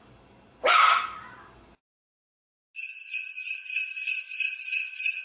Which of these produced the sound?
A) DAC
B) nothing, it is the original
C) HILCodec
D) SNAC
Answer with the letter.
B